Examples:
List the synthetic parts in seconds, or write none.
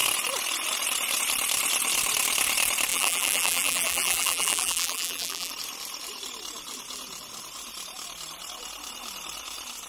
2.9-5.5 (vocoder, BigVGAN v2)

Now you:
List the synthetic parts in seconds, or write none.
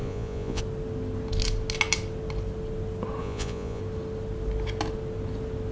0.0-0.6 (vocoder, Vocos); 3.2-3.8